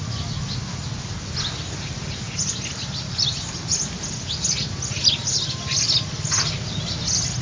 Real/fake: real